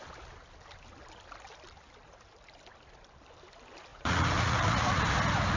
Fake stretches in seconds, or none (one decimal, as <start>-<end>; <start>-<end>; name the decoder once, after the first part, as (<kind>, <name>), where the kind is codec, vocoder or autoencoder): 3.9-5.0 (vocoder, Vocos)